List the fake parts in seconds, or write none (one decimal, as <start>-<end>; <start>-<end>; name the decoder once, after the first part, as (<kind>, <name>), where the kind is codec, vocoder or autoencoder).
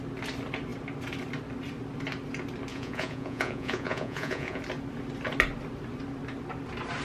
2.7-4.6 (vocoder, Vocos)